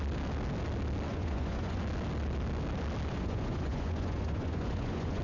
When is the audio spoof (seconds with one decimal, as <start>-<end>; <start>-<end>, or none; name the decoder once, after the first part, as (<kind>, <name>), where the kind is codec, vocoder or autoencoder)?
1.1-1.8 (vocoder, Vocos); 3.1-5.2